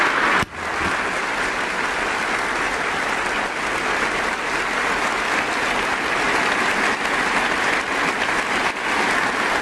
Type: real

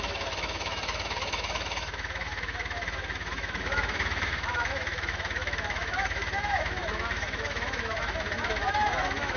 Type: fake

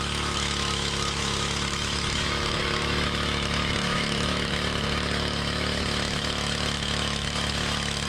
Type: fake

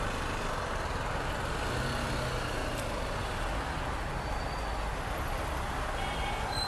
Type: real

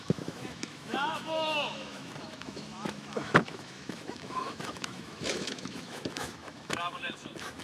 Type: fake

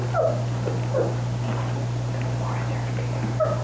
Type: real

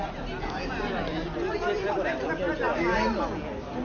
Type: real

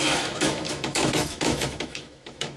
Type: fake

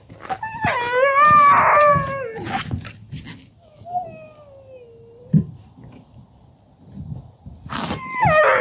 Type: real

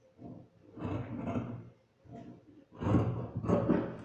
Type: real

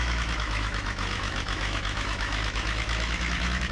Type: fake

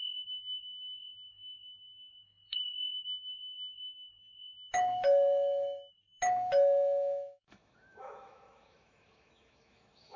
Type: fake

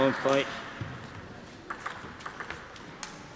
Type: real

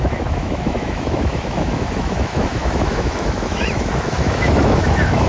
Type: fake